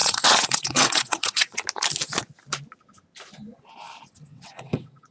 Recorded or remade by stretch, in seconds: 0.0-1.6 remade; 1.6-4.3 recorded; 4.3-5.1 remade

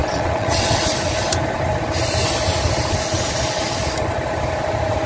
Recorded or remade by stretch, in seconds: 0.0-0.8 remade; 0.8-5.1 recorded

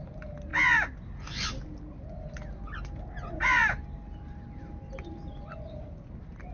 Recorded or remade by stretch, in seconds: 0.0-6.5 recorded

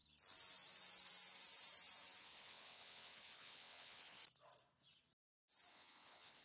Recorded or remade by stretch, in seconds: 0.0-2.2 recorded; 2.2-4.2 remade; 4.2-5.7 recorded; 5.7-6.4 remade

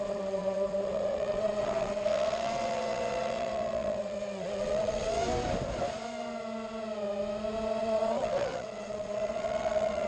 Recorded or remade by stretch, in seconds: 0.0-5.2 remade; 5.2-7.8 recorded; 7.8-10.1 remade

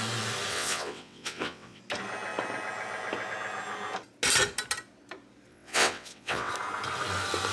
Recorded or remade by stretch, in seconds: 0.0-0.5 recorded; 0.5-1.8 remade; 1.8-5.5 recorded; 5.5-6.5 remade; 6.5-7.5 recorded

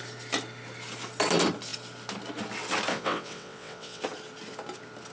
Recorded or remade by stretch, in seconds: 0.0-2.9 recorded; 2.9-4.0 remade; 4.0-5.1 recorded